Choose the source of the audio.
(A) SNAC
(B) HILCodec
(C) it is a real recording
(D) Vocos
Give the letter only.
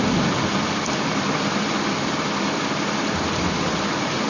C